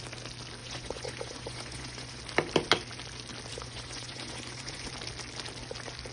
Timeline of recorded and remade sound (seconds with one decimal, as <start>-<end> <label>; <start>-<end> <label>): 0.0-0.6 recorded; 0.6-2.2 remade; 2.2-3.5 recorded; 3.5-4.9 remade; 4.9-6.1 recorded